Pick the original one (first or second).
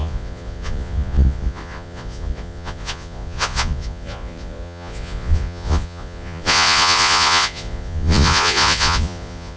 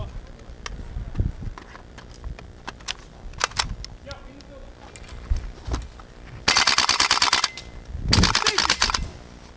second